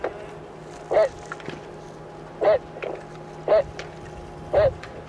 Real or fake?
real